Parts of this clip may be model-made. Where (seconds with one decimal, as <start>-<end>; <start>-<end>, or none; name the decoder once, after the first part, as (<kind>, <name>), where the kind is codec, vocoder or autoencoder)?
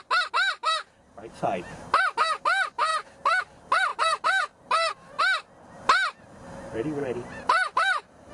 3.9-5.2 (vocoder, BigVGAN v2); 7.0-8.3